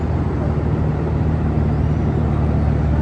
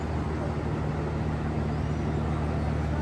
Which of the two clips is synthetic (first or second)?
first